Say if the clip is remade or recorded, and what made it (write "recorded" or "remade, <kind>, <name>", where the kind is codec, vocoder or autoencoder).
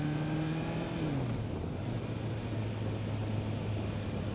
recorded